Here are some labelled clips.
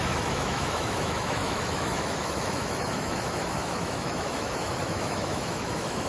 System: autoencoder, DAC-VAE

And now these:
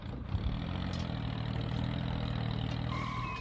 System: none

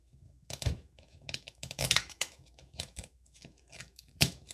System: autoencoder, DAC-VAE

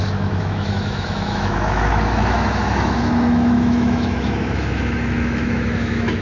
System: autoencoder, DAC-VAE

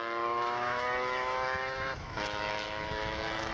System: autoencoder, DAC-VAE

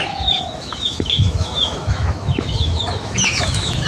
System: autoencoder, DAC-VAE